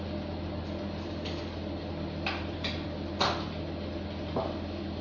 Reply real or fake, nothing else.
real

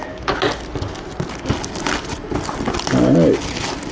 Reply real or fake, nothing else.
real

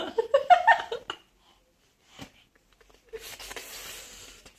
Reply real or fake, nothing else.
real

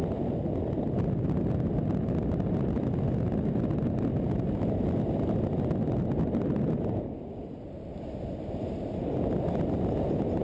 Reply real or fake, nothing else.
real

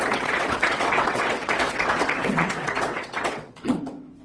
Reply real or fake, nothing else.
fake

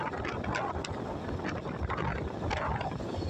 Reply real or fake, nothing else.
real